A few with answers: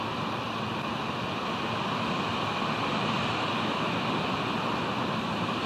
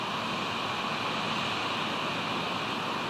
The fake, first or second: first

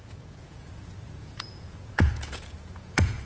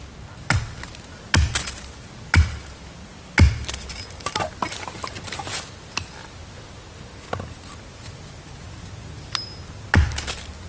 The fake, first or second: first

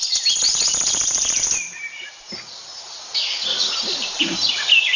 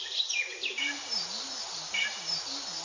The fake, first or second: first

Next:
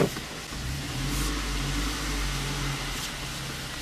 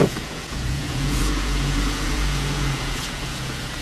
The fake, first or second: second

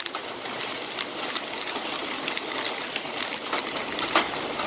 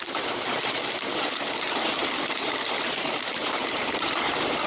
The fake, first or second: second